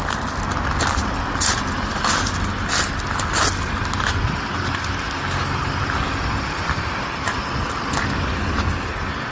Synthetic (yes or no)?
no